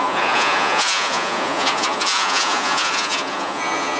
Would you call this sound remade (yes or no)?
yes